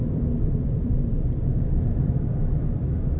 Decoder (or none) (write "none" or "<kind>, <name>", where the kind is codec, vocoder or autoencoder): vocoder, BigVGAN v2